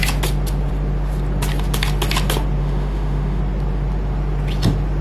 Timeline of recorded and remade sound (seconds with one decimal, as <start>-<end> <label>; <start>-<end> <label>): 0.0-2.6 recorded; 2.6-3.4 remade; 3.4-5.0 recorded